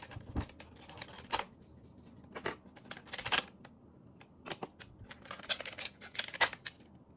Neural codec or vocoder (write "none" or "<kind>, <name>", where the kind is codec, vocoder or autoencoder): none